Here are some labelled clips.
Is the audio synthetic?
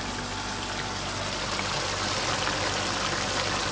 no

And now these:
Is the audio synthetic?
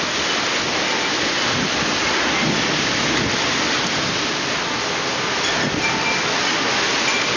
no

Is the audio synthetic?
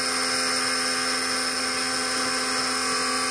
no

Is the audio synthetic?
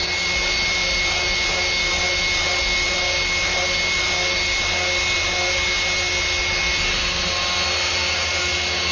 no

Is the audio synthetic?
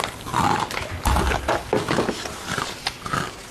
no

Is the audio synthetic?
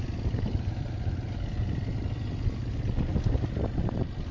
no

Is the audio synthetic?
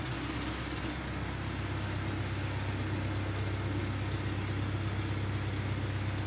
no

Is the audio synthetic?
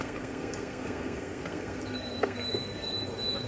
yes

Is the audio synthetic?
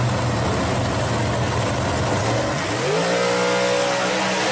no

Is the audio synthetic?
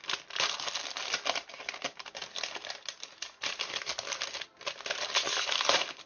no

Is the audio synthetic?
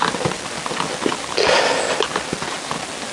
no